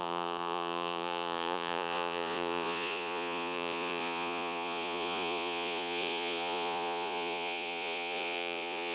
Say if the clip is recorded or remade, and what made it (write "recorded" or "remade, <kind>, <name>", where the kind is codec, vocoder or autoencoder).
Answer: remade, vocoder, Vocos